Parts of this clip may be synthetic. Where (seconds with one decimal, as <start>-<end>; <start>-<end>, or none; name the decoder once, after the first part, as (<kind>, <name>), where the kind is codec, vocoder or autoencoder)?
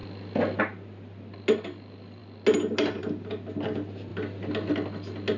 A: none